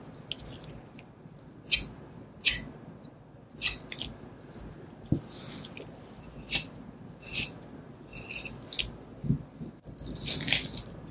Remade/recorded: recorded